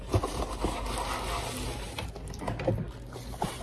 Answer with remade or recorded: recorded